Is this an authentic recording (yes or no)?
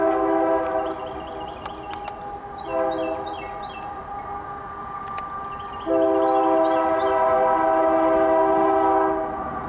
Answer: yes